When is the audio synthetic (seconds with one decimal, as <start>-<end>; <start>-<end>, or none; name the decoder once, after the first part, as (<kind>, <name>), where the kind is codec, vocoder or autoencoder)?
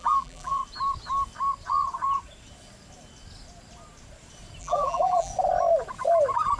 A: 0.0-0.6 (vocoder, BigVGAN v2); 4.6-5.3